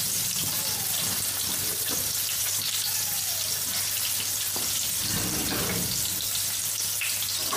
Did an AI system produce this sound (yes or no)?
no